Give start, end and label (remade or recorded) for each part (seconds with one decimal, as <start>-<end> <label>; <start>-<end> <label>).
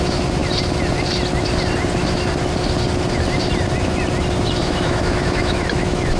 0.0-4.6 recorded; 4.6-6.2 remade